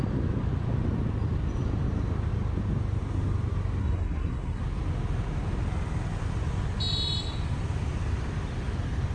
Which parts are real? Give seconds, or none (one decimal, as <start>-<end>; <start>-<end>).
0.0-3.8; 4.6-9.1